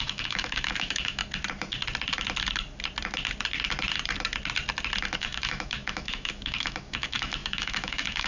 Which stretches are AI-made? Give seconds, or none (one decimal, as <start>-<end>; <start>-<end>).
0.0-1.2; 5.2-8.3